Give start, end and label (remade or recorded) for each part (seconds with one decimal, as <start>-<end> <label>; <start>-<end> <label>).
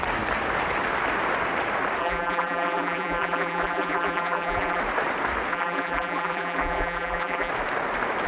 0.0-2.0 recorded; 2.0-4.8 remade; 4.8-5.5 recorded; 5.5-7.5 remade; 7.5-8.3 recorded